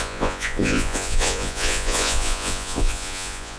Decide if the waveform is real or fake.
fake